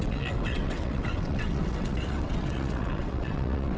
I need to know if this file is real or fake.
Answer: fake